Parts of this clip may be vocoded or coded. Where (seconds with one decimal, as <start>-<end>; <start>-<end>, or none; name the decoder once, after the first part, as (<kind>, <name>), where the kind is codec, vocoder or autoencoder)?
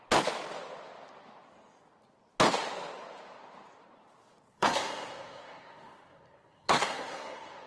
4.5-7.7 (codec, SNAC)